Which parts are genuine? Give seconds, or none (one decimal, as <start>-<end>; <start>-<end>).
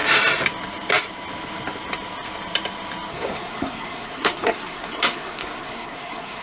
0.0-3.1